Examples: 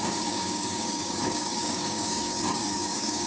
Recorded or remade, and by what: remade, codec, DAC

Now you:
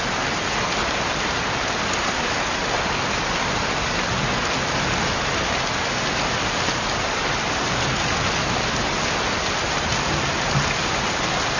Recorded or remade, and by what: recorded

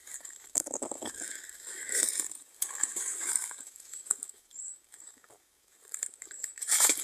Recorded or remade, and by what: remade, codec, DAC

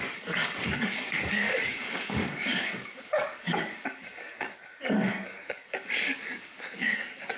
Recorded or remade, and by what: remade, codec, DAC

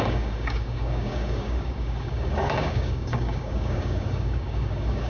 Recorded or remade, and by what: remade, codec, DAC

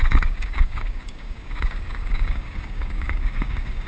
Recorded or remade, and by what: remade, codec, DAC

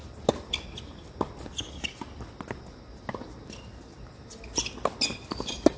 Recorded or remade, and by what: recorded